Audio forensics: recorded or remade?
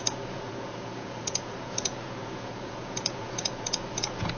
remade